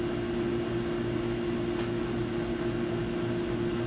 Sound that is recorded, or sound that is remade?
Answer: recorded